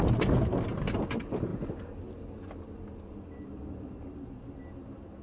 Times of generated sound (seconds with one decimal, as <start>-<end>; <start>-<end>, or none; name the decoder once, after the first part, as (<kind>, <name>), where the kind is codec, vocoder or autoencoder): none

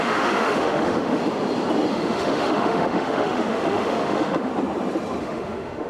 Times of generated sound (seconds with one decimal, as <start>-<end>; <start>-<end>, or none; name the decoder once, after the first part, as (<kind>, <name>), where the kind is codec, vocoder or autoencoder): 0.0-1.2 (autoencoder, DAC-VAE); 1.9-4.5; 5.2-5.9